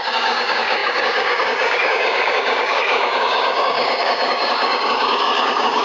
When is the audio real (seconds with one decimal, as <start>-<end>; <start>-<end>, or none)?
none